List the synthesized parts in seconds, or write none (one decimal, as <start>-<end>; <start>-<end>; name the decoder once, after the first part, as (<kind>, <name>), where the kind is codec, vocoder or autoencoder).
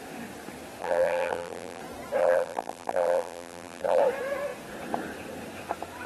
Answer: 0.8-1.8 (vocoder, BigVGAN v2); 2.2-4.0